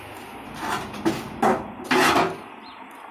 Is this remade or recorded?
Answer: recorded